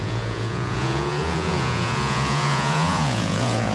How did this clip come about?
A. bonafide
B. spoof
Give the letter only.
B